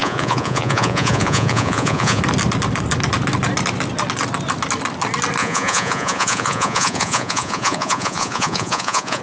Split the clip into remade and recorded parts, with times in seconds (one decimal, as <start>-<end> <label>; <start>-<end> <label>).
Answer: 0.0-2.2 remade; 2.2-5.4 recorded; 5.4-9.2 remade